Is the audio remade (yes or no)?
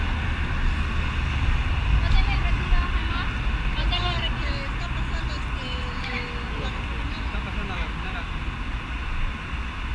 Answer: no